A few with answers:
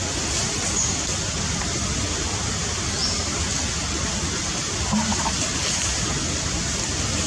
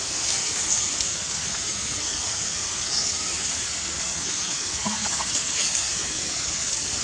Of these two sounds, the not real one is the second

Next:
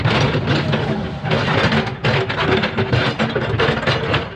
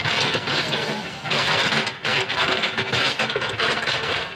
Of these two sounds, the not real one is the second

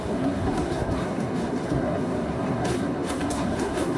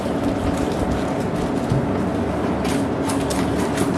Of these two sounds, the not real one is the first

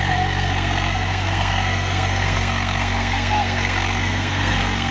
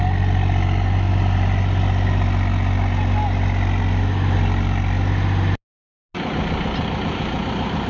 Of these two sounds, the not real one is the first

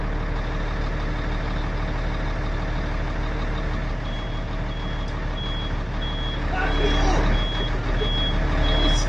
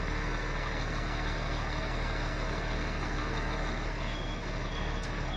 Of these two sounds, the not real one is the second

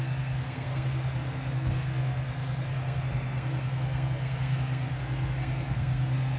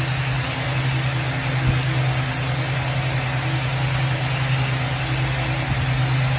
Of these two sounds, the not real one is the first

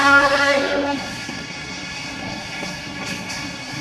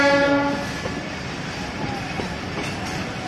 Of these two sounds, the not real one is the first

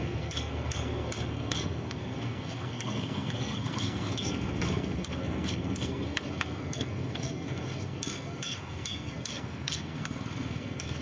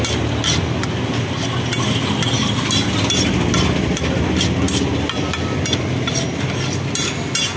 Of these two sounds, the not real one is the first